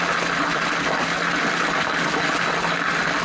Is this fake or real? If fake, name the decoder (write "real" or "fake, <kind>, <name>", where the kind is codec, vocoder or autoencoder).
real